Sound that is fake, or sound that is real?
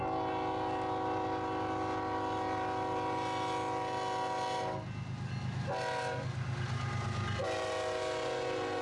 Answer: real